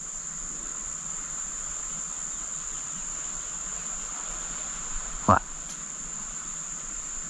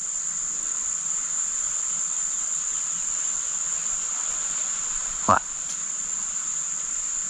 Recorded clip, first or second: first